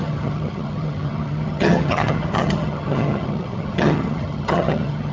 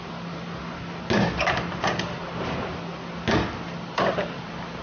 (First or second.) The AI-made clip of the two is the first